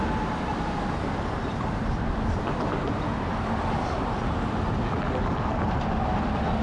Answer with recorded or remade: recorded